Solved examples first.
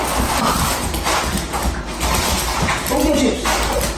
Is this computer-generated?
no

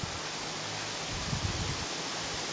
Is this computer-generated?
no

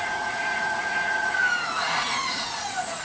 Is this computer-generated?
yes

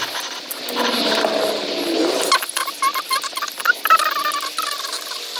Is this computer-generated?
no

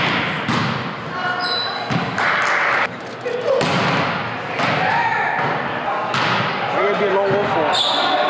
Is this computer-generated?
no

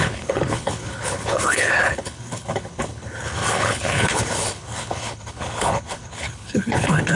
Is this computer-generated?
yes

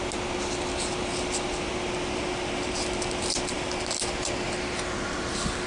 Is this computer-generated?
no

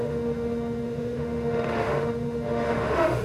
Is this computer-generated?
yes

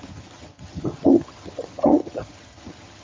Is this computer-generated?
yes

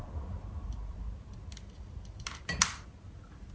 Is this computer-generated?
no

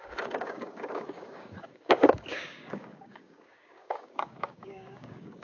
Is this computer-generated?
yes